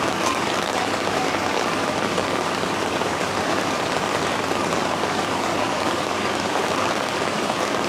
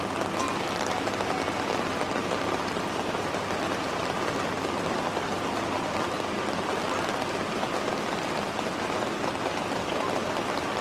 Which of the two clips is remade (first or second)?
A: first